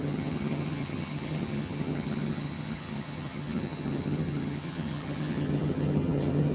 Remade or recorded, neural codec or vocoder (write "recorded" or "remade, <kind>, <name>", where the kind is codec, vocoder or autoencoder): remade, vocoder, HiFi-GAN